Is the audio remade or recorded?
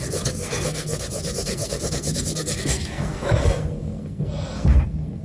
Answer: remade